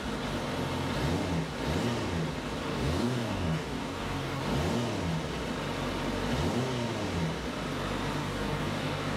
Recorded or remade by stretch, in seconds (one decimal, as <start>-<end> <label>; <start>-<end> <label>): 0.0-2.7 recorded; 2.7-4.4 remade; 4.4-8.2 recorded; 8.2-9.2 remade